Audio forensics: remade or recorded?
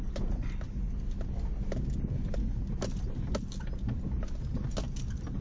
recorded